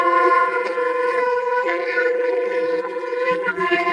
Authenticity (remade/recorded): remade